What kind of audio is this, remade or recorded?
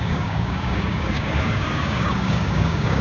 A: remade